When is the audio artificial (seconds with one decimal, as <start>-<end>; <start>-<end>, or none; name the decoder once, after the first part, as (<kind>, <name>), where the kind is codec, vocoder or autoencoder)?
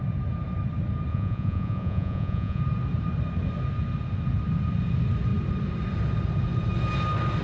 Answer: 1.1-2.6 (vocoder, Vocos)